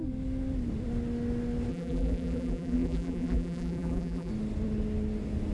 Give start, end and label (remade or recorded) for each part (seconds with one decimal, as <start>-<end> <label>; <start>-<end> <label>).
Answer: 0.0-1.7 recorded; 1.7-4.3 remade; 4.3-5.5 recorded